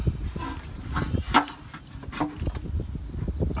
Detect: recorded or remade recorded